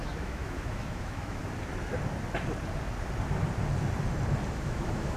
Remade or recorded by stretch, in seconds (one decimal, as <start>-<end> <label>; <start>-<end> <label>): 0.0-1.4 remade; 1.4-4.5 recorded; 4.5-5.2 remade